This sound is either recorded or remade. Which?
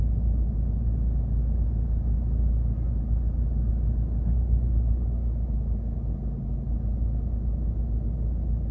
recorded